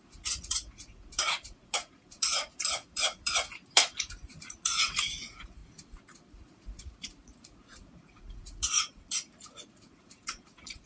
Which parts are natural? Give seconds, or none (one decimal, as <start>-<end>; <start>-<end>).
5.6-6.3